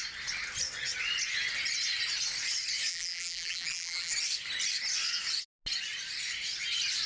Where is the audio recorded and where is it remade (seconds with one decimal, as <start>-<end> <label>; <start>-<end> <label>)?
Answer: 0.0-2.9 recorded; 2.9-4.1 remade; 4.1-7.1 recorded